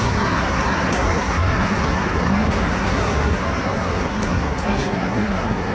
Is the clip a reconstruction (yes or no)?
yes